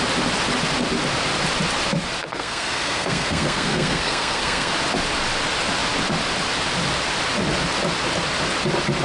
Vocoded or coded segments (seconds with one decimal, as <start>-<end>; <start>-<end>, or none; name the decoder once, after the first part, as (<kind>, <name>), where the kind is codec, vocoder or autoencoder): 2.2-4.7 (codec, SNAC)